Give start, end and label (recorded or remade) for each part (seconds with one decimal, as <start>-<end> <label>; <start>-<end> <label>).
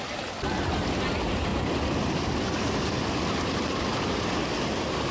0.0-5.1 recorded